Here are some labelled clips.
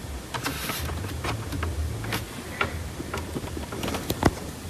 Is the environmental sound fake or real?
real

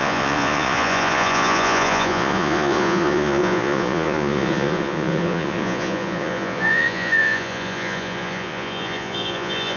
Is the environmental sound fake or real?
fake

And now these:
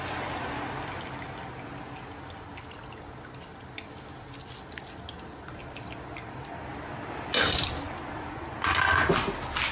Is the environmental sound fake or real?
real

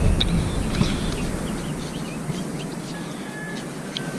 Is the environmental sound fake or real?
real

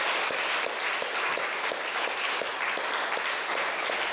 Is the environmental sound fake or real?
real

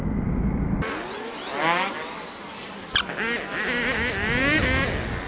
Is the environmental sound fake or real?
real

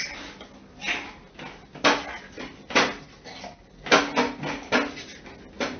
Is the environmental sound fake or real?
real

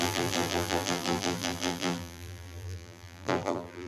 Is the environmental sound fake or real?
fake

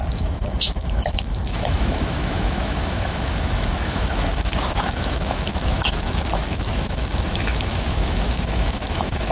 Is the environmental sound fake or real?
fake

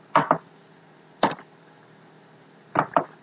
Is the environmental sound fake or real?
fake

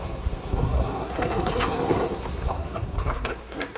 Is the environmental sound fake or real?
fake